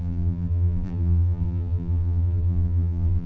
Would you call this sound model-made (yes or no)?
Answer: yes